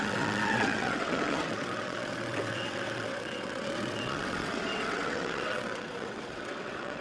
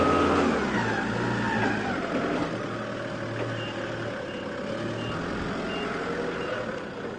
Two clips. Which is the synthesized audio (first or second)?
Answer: first